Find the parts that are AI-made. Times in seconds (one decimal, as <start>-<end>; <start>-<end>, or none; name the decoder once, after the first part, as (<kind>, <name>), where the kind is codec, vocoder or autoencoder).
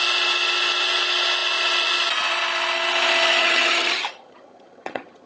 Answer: 3.4-5.3 (vocoder, HiFi-GAN)